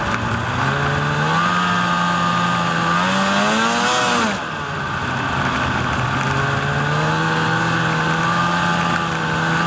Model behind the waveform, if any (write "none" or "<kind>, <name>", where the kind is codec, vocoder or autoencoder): none